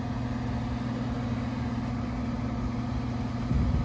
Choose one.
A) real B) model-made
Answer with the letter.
A